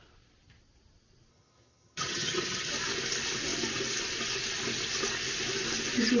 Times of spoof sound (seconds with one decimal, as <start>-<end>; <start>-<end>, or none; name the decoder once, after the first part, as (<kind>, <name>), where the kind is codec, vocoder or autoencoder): 1.3-2.7 (vocoder, HiFi-GAN)

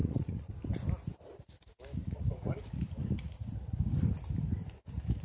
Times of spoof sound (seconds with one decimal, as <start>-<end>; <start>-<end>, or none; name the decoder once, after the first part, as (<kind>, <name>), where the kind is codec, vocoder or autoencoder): 0.0-0.5 (vocoder, Vocos); 2.0-2.6

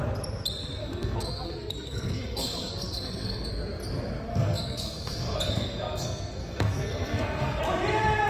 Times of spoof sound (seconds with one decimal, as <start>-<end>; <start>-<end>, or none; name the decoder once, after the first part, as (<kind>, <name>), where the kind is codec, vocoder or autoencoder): 0.8-3.5 (codec, SNAC); 4.3-7.6

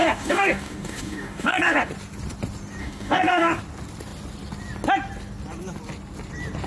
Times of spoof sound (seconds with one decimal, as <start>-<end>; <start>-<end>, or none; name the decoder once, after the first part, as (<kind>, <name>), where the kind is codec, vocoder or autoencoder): 0.0-1.9 (codec, DAC); 2.8-3.6

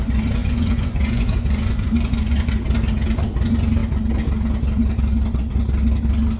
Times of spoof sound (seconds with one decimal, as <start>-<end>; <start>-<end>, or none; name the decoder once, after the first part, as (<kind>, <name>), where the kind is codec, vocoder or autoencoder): 0.4-2.5 (vocoder, Vocos)

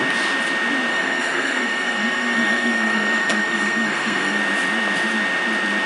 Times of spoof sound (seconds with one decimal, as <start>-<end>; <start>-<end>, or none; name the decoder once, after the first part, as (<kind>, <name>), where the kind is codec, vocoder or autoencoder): 0.9-4.4 (codec, SNAC)

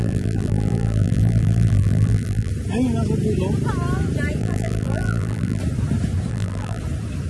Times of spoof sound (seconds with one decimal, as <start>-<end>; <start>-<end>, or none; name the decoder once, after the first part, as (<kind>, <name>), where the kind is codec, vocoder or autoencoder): 0.0-2.5 (vocoder, BigVGAN v2); 4.4-5.6; 6.3-6.8